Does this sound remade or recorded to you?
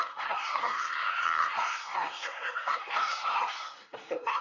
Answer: remade